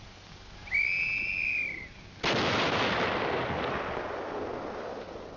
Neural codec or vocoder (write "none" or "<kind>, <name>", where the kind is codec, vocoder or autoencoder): none